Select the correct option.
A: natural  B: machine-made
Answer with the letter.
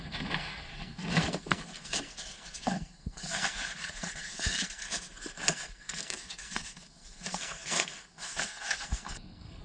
B